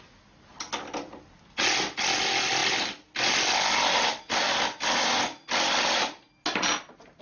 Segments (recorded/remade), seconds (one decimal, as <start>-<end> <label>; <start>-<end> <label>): 0.0-7.2 recorded